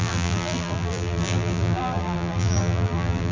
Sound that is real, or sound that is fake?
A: fake